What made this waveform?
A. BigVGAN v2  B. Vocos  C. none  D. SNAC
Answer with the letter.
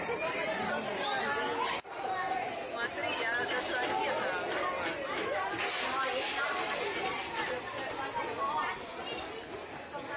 C